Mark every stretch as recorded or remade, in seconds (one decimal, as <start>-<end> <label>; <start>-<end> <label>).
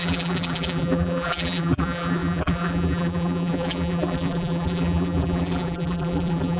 0.0-6.6 remade